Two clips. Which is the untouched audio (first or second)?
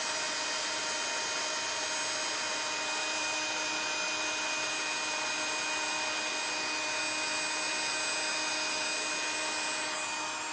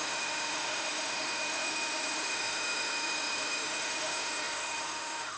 first